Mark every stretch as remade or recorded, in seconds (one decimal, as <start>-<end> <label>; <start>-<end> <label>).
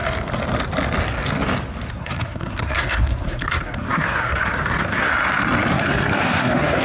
0.0-1.9 recorded; 1.9-5.1 remade; 5.1-5.7 recorded; 5.7-6.8 remade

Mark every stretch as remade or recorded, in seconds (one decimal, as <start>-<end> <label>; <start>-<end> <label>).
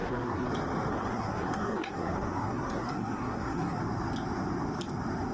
0.0-0.5 remade; 0.5-0.9 recorded; 0.9-3.8 remade; 3.8-5.3 recorded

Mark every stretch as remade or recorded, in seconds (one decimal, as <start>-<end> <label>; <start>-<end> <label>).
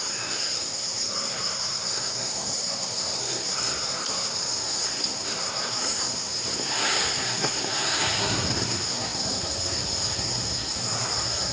0.0-11.5 remade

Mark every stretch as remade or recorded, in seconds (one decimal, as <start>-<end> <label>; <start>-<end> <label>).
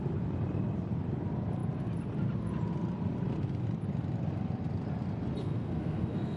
0.0-5.4 recorded; 5.4-6.4 remade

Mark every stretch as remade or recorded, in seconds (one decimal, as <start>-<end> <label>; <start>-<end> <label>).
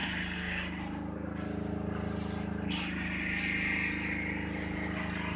0.0-5.4 recorded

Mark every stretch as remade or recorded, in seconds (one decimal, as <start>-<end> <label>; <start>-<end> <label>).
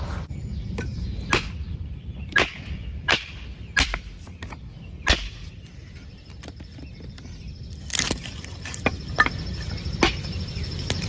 0.0-11.1 recorded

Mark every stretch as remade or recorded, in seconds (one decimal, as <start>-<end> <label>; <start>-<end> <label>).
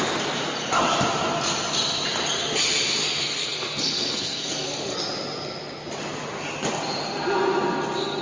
0.0-3.0 recorded; 3.0-5.1 remade; 5.1-8.2 recorded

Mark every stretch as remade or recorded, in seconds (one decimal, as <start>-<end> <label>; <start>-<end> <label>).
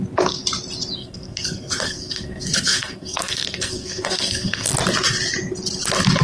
0.0-1.0 recorded; 1.0-4.7 remade; 4.7-6.2 recorded